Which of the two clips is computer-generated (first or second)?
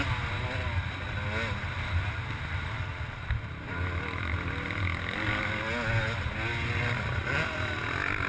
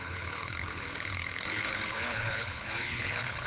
second